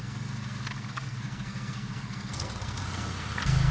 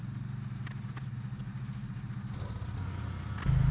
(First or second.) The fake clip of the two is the first